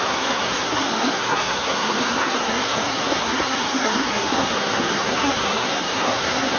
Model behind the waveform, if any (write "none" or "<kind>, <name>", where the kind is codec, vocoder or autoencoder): codec, SNAC